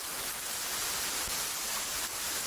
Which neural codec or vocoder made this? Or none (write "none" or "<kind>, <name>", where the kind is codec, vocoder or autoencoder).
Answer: none